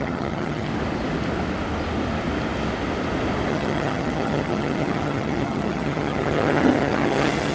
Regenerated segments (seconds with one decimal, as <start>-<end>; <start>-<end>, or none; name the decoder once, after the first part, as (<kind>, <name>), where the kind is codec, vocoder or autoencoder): 0.0-0.7 (vocoder, HiFi-GAN); 3.5-7.5